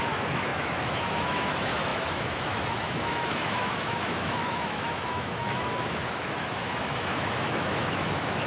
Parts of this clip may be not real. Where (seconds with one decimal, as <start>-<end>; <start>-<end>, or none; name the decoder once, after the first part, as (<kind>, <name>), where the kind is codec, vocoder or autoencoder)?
0.0-8.5 (autoencoder, DAC-VAE)